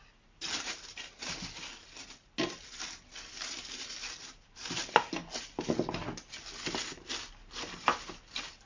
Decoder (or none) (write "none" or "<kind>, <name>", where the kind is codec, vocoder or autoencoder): none